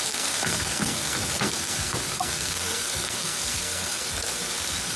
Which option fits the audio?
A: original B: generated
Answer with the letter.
B